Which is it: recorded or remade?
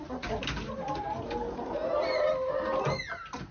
recorded